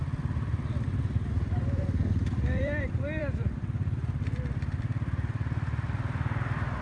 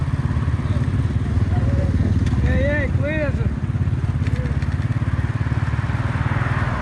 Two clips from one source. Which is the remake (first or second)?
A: first